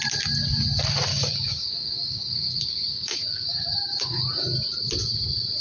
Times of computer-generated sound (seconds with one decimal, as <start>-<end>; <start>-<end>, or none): 1.1-4.3